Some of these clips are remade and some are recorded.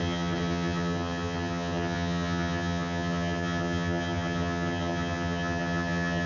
remade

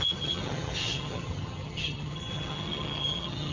remade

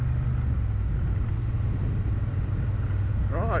recorded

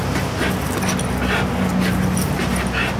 recorded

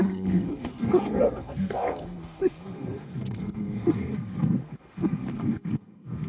remade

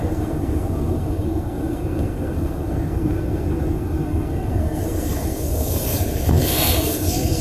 remade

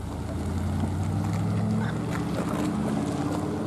recorded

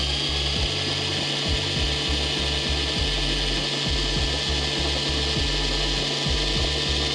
recorded